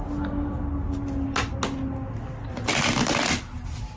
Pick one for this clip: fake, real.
real